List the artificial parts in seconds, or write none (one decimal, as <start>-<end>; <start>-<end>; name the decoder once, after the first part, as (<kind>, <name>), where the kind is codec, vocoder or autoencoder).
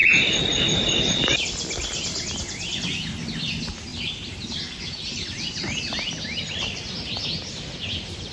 3.9-6.8 (vocoder, BigVGAN v2)